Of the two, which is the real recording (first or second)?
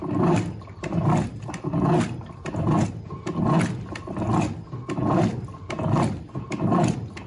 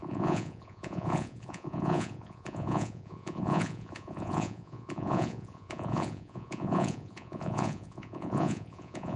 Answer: first